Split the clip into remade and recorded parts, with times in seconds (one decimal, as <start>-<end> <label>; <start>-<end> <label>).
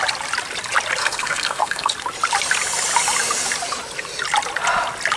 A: 0.0-1.0 recorded; 1.0-1.9 remade; 1.9-5.2 recorded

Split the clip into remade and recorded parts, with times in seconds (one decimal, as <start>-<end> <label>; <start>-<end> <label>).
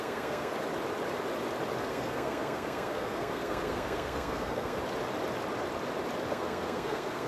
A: 0.0-0.5 remade; 0.5-1.9 recorded; 1.9-4.8 remade; 4.8-6.3 recorded; 6.3-7.3 remade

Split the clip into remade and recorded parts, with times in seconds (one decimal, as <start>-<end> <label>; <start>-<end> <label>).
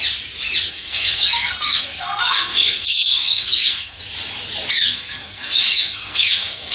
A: 0.0-0.7 recorded; 0.7-4.0 remade; 4.0-4.7 recorded; 4.7-6.7 remade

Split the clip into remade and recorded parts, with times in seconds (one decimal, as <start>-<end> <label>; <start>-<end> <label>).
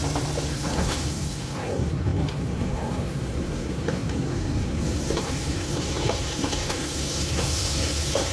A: 0.0-0.5 recorded; 0.5-8.3 remade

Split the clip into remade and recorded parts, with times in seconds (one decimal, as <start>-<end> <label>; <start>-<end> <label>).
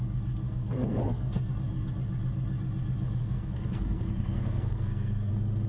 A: 0.0-0.4 recorded; 0.4-1.5 remade; 1.5-3.2 recorded; 3.2-5.3 remade; 5.3-5.7 recorded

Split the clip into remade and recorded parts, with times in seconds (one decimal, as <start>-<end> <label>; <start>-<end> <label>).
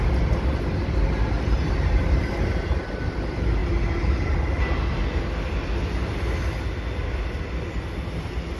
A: 0.0-8.6 recorded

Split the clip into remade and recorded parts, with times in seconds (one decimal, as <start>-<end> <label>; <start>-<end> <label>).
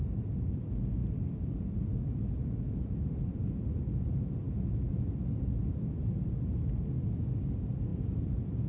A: 0.0-8.7 recorded